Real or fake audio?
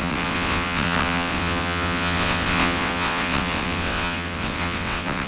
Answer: fake